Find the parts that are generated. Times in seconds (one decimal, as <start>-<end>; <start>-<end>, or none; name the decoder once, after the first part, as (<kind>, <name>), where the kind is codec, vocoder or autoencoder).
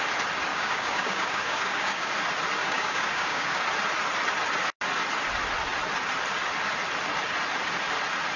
0.5-2.1 (codec, DAC); 2.6-3.6